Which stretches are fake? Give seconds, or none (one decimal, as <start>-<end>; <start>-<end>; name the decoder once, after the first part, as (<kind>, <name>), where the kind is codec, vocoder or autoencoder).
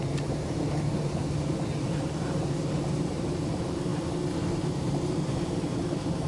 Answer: 0.0-1.2 (vocoder, BigVGAN v2); 1.8-3.9; 4.5-6.3